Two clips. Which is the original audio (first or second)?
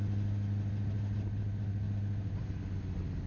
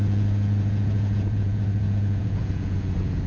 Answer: first